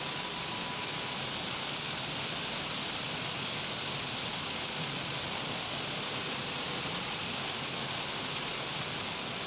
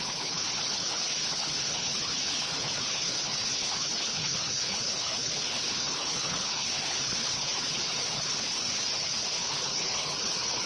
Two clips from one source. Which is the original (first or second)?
first